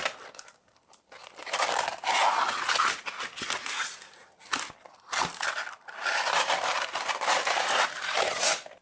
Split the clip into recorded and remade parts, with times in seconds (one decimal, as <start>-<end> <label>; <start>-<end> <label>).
0.0-8.8 recorded